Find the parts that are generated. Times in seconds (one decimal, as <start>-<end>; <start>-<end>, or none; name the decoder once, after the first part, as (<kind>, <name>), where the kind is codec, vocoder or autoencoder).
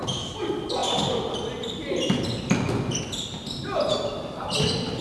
none